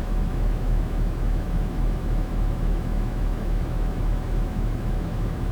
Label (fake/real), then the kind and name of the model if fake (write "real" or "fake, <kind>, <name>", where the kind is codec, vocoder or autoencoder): fake, autoencoder, DAC-VAE